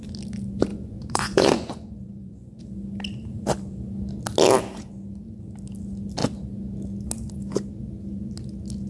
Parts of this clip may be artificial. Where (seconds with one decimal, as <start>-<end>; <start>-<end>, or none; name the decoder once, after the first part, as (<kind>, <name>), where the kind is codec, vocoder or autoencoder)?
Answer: 0.7-2.6 (vocoder, Vocos)